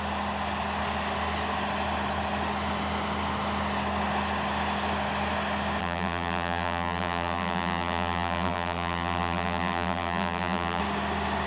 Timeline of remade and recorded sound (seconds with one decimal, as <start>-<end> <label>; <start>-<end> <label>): 0.0-5.8 recorded; 5.8-10.8 remade; 10.8-11.5 recorded